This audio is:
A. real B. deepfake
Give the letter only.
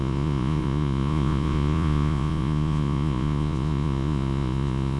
B